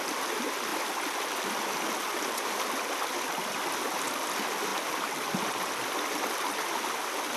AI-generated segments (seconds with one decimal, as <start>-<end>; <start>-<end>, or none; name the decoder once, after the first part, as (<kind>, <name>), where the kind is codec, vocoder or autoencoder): none